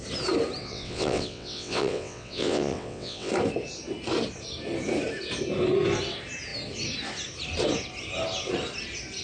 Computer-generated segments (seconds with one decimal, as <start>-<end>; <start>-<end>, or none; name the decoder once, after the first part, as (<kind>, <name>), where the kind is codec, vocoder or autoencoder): 0.6-3.3 (vocoder, WaveNeXt)